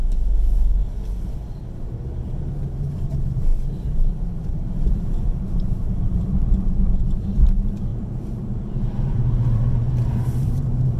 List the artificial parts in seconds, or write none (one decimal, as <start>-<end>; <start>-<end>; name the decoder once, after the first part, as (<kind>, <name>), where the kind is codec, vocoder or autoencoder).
0.0-0.8 (vocoder, BigVGAN v2); 2.5-11.0